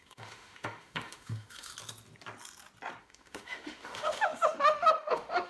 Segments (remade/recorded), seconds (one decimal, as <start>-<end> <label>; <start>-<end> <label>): 0.0-1.7 remade; 1.7-3.0 recorded; 3.0-5.5 remade